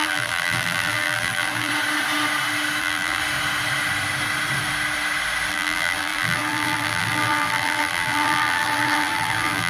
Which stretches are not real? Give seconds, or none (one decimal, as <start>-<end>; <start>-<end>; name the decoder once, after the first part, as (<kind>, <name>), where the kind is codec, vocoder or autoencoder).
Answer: 0.0-1.7 (vocoder, BigVGAN v2); 2.8-3.2; 5.5-9.7